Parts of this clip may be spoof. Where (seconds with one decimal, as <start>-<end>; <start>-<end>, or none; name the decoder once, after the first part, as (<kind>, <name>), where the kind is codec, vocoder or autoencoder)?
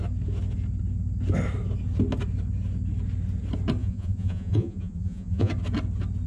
3.8-5.5 (vocoder, Vocos)